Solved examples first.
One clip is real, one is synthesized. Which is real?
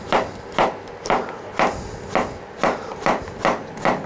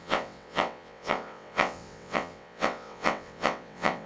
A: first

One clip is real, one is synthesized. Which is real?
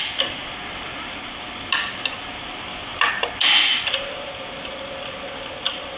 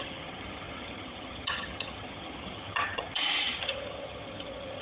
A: first